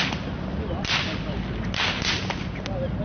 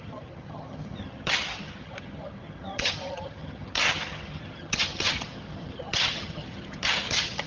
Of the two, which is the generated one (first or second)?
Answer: second